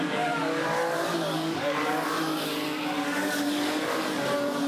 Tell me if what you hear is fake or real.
fake